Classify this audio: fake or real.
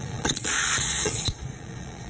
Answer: fake